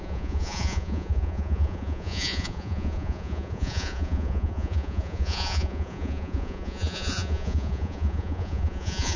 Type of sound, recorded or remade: remade